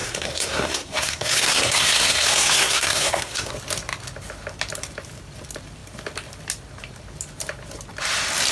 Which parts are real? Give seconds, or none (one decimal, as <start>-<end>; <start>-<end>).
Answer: 3.5-8.5